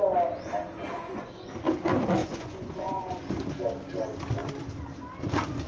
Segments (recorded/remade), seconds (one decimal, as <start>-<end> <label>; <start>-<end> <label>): 0.0-0.9 recorded; 0.9-1.5 remade; 1.5-2.2 recorded; 2.2-3.1 remade; 3.1-5.7 recorded